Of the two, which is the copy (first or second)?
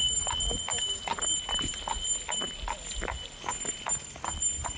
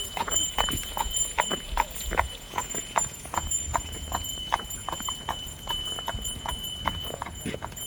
second